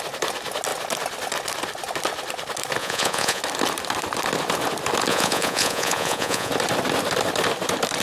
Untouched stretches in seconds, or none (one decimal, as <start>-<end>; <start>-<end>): 0.0-2.8; 3.4-5.1; 6.5-8.0